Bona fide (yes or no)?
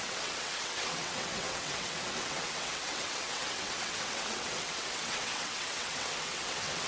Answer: no